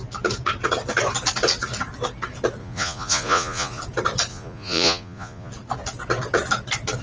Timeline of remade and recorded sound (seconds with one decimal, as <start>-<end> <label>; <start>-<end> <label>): 0.0-2.6 recorded; 2.6-3.8 remade; 3.8-4.3 recorded; 4.3-5.5 remade; 5.5-7.0 recorded